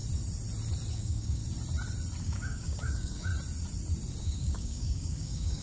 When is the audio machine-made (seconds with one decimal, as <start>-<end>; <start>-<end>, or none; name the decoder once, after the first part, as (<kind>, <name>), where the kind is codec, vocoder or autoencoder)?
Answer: 0.9-1.4 (codec, DAC); 2.2-3.3; 4.2-5.6